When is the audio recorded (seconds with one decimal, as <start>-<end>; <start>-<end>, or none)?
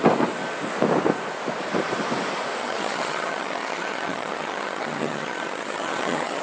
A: 0.0-2.6